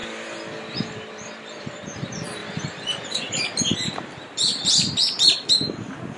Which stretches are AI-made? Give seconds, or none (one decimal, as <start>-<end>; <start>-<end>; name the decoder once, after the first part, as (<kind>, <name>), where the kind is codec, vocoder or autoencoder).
0.0-6.2 (vocoder, BigVGAN v2)